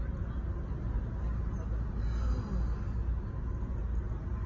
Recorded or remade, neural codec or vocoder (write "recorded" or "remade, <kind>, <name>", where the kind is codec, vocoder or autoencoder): recorded